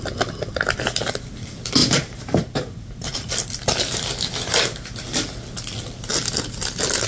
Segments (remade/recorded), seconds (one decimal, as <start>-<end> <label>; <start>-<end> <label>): 0.0-1.8 recorded; 1.8-3.3 remade; 3.3-7.1 recorded